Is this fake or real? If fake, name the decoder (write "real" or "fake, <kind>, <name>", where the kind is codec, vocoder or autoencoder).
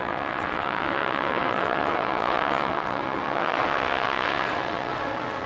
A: fake, vocoder, WaveNeXt